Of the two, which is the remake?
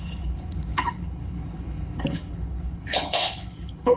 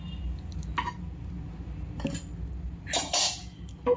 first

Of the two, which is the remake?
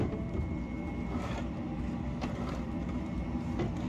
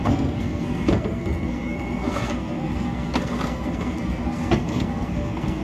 second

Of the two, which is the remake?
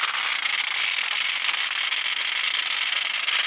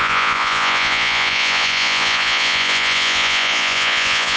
second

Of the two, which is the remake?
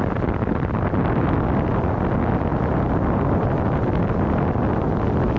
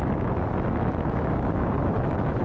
second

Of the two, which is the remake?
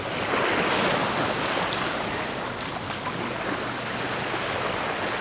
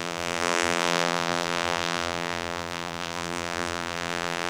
second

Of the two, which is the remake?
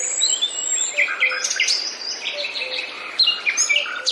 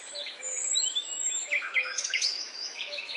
second